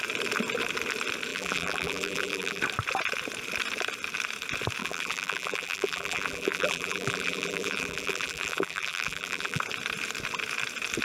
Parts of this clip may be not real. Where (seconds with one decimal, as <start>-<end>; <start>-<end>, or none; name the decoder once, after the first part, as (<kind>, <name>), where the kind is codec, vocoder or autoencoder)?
1.3-2.6 (vocoder, BigVGAN v2); 4.8-9.6